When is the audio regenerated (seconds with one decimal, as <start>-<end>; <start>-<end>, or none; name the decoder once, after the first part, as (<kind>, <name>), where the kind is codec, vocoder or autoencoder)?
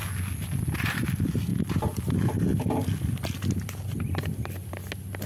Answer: none